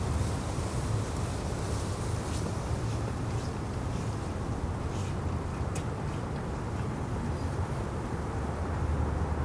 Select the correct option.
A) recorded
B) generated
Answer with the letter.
A